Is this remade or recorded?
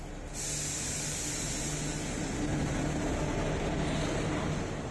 recorded